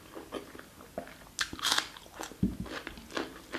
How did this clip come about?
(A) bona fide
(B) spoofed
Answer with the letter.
A